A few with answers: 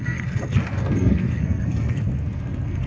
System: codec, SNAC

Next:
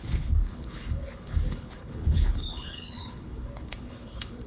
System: codec, HILCodec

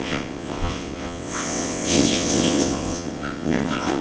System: vocoder, WaveNeXt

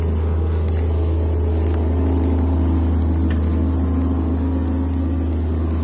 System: none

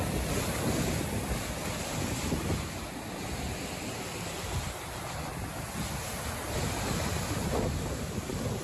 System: none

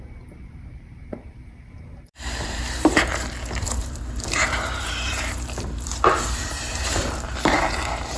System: vocoder, BigVGAN v2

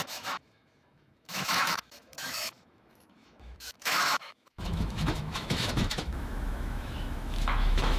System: autoencoder, DAC-VAE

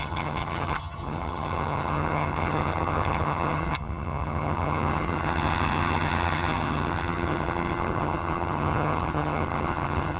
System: vocoder, HiFi-GAN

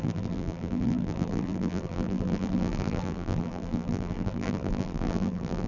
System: vocoder, BigVGAN v2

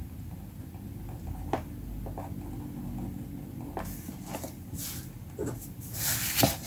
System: none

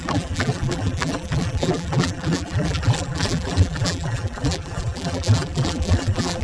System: vocoder, BigVGAN v2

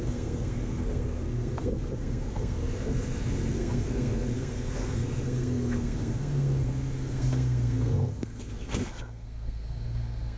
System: codec, SNAC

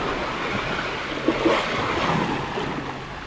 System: none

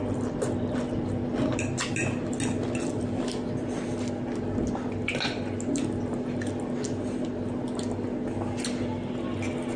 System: none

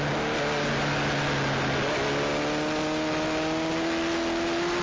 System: none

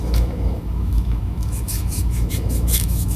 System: autoencoder, DAC-VAE